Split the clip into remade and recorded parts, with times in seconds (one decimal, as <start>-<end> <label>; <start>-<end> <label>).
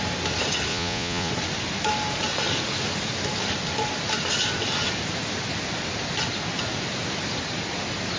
0.0-0.7 recorded; 0.7-1.3 remade; 1.3-8.2 recorded